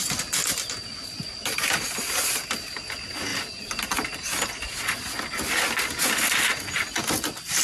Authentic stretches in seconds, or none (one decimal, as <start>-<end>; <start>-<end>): 0.0-7.6